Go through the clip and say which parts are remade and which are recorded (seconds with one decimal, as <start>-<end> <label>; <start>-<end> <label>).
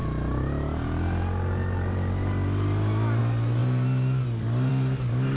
0.0-5.4 recorded